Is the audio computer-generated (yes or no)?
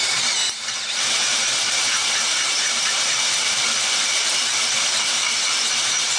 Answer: yes